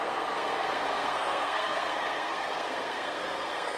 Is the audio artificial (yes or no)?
yes